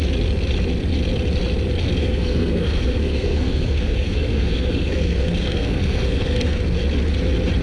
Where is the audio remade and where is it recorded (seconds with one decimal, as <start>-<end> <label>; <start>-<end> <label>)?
0.0-2.0 recorded; 2.0-6.6 remade; 6.6-7.6 recorded